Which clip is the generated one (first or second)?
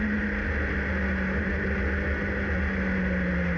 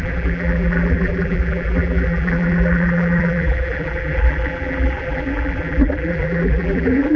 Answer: second